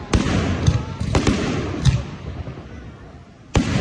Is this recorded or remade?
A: recorded